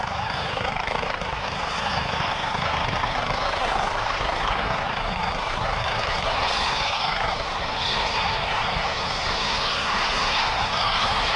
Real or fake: fake